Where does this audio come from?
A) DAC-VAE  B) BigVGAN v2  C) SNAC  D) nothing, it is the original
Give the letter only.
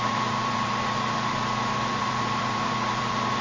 B